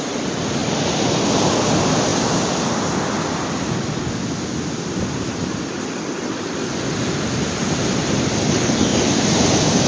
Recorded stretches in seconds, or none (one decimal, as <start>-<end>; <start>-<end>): 0.0-8.9